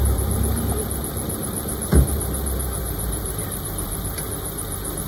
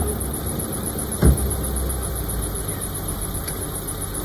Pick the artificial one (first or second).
first